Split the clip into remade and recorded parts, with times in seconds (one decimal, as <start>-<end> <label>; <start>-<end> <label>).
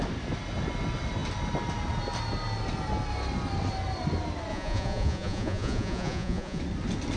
0.0-4.5 recorded; 4.5-6.6 remade; 6.6-7.2 recorded